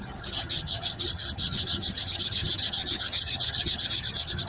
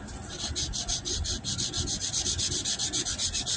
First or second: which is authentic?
second